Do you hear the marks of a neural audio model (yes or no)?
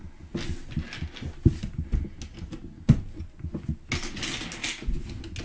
no